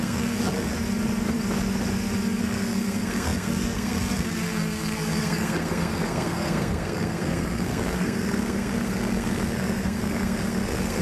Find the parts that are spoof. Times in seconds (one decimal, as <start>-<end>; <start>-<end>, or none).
0.0-0.7; 2.4-11.0